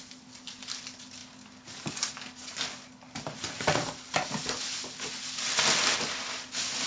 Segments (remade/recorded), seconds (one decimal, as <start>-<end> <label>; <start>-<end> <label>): 0.0-6.9 recorded